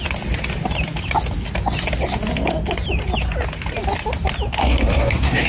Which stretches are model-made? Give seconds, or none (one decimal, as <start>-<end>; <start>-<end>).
4.6-5.5